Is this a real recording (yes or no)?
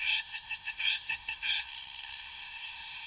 no